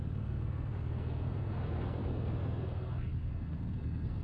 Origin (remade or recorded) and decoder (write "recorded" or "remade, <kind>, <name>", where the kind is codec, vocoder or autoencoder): remade, codec, SNAC